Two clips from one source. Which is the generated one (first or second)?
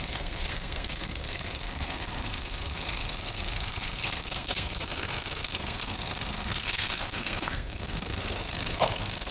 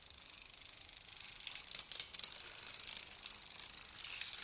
first